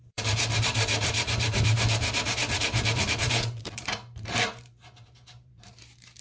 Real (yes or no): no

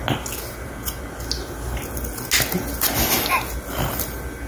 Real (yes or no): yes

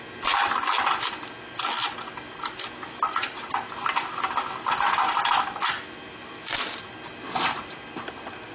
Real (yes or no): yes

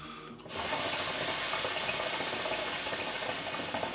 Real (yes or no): yes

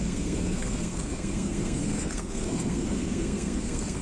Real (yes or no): no